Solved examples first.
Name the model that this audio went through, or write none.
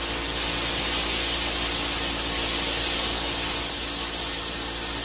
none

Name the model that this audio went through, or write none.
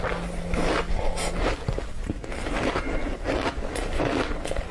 none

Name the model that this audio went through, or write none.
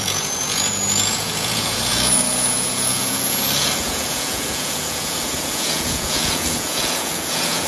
vocoder, Vocos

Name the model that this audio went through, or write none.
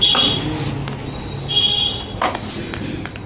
none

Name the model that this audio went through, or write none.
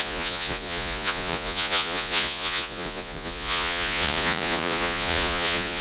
vocoder, Vocos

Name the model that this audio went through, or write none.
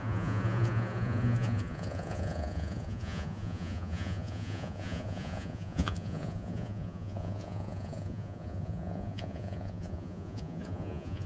vocoder, Vocos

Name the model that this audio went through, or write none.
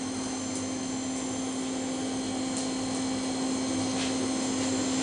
none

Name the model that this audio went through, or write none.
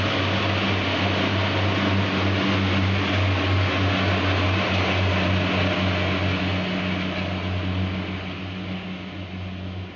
none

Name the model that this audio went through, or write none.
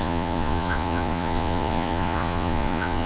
vocoder, Vocos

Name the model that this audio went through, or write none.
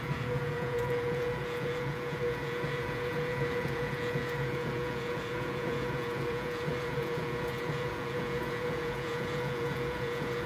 vocoder, Vocos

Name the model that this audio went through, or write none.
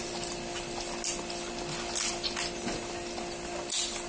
none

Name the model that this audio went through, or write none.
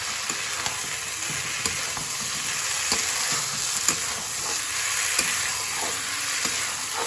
none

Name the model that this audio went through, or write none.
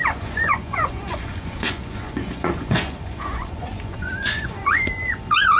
vocoder, Vocos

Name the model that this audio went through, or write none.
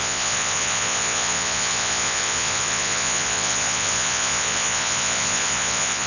vocoder, Vocos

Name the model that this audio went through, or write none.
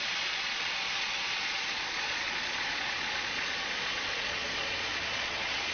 vocoder, Vocos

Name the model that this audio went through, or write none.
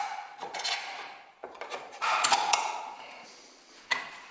vocoder, Vocos